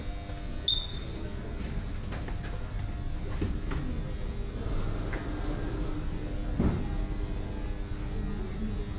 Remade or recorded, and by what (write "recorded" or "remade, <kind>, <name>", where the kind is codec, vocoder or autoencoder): recorded